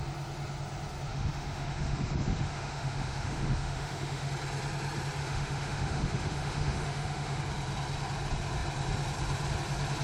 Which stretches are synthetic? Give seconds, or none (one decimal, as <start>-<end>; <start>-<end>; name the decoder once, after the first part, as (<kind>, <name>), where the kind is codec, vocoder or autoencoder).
1.1-4.3 (autoencoder, DAC-VAE); 5.2-7.4